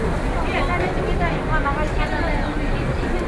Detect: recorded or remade recorded